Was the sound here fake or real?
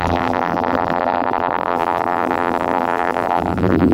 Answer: fake